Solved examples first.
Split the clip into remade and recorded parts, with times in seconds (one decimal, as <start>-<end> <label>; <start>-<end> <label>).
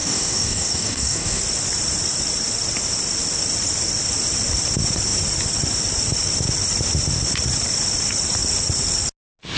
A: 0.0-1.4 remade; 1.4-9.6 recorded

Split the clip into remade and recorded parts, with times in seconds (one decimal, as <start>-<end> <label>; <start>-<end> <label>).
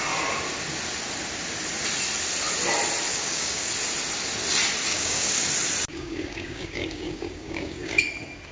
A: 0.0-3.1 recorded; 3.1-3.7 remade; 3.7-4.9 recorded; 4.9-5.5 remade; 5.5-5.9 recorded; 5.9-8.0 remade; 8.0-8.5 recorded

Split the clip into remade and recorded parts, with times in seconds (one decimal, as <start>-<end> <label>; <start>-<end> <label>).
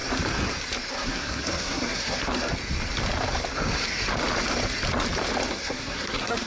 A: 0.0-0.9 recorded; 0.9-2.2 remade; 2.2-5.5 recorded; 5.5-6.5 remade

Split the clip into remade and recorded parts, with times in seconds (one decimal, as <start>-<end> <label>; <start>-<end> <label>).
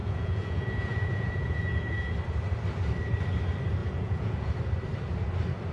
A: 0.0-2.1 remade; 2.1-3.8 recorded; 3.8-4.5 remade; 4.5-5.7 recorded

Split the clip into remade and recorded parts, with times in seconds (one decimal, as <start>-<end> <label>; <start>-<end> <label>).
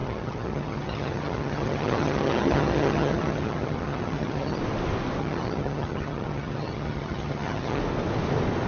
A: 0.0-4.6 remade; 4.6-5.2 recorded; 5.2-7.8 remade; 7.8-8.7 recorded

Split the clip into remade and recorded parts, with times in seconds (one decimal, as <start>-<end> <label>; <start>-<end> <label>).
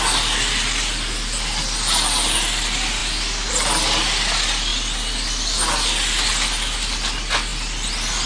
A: 0.0-8.3 recorded